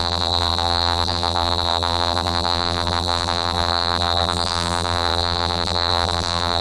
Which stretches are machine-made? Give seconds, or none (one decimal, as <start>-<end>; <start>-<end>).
0.0-6.6